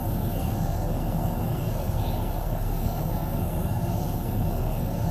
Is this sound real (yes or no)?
no